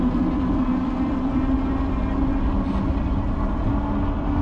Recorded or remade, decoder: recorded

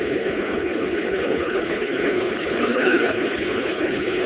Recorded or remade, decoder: remade, codec, HILCodec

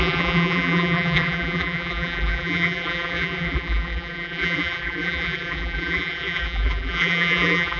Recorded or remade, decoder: remade, vocoder, BigVGAN v2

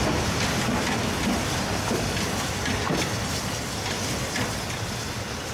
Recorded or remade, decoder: recorded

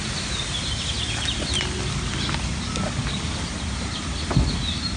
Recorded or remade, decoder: recorded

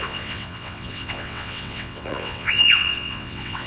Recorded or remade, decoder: remade, vocoder, WaveNeXt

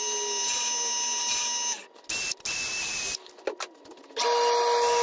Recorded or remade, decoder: recorded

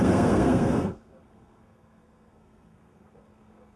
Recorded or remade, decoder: remade, codec, SNAC